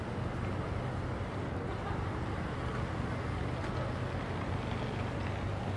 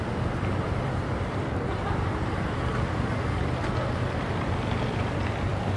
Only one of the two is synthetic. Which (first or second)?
second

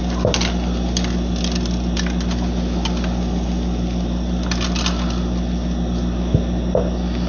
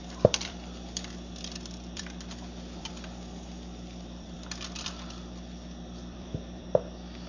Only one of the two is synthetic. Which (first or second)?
second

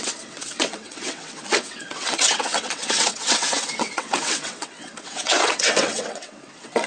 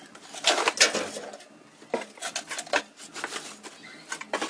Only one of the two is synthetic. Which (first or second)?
first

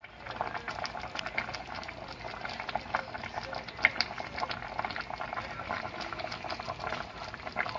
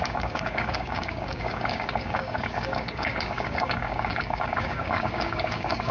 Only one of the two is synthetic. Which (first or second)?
second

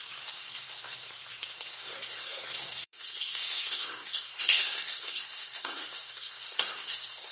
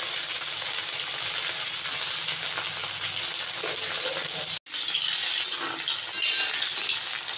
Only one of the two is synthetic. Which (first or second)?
first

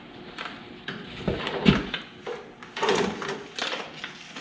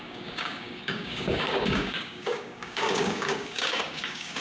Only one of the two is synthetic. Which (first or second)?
second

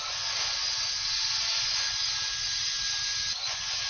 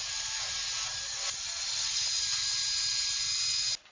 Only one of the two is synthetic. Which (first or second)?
first